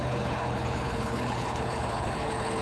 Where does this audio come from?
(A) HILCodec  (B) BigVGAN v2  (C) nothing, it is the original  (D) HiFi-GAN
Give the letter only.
A